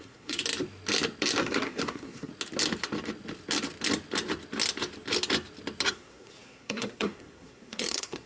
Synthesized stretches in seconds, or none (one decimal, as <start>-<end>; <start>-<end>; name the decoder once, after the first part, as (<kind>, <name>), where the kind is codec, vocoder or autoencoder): 0.0-0.4 (codec, SNAC); 1.4-2.3; 5.9-8.3

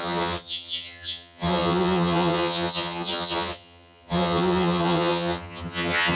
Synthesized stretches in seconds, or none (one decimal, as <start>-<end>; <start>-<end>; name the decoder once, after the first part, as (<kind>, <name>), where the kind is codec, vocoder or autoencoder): 0.0-6.2 (vocoder, HiFi-GAN)

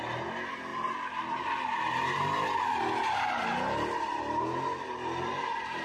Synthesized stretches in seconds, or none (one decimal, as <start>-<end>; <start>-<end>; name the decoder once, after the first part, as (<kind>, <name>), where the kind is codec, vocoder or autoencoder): none

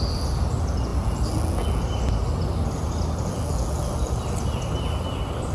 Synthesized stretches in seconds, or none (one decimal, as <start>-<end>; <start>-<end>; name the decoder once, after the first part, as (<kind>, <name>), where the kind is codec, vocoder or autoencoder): none

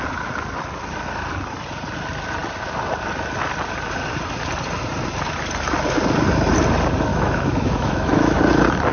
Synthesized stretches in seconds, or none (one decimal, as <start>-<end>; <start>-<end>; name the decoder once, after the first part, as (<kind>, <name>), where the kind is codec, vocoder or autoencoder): 7.1-8.4 (autoencoder, DAC-VAE)

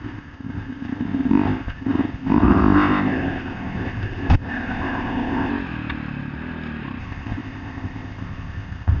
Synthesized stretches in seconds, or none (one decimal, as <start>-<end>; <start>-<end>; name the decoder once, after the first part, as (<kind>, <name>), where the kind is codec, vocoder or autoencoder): 0.0-5.5 (codec, ZipCodec); 7.0-9.0

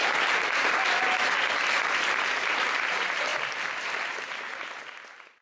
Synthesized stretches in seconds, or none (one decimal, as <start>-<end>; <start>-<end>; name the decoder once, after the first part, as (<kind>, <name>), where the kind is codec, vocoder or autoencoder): none

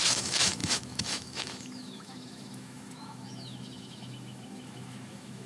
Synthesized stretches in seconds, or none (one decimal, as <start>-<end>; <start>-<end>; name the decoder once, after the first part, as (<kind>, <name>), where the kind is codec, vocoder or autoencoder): 0.0-5.5 (autoencoder, DAC-VAE)